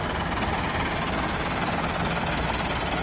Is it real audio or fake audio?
real